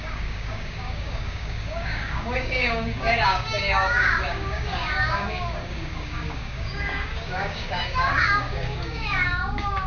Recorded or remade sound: remade